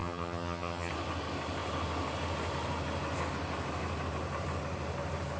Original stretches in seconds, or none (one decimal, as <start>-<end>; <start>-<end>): 0.9-5.4